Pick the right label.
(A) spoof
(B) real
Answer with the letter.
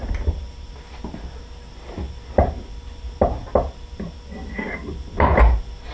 B